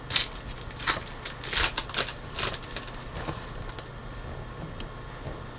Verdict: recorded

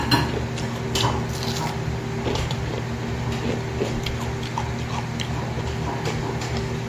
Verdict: recorded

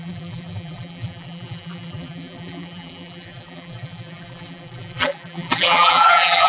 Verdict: remade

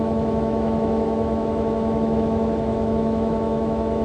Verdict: remade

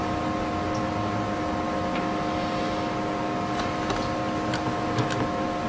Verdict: recorded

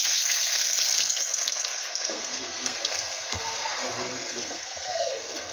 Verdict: remade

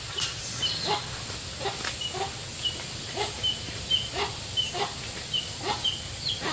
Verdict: recorded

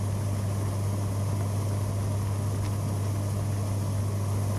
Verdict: recorded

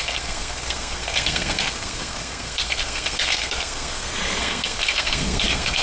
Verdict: remade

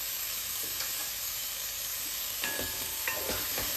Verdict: remade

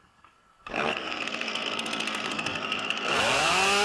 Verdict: remade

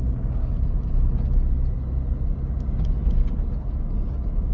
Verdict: recorded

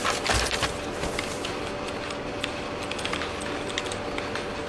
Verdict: recorded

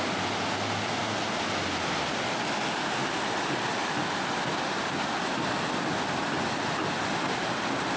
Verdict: recorded